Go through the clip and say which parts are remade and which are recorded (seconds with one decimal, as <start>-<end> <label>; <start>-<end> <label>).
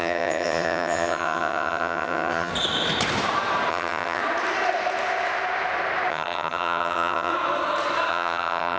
0.0-2.5 remade; 2.5-3.7 recorded; 3.7-4.2 remade; 4.2-6.1 recorded; 6.1-7.3 remade; 7.3-8.1 recorded; 8.1-8.8 remade